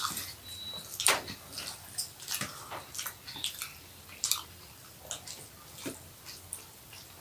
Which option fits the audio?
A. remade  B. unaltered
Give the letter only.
A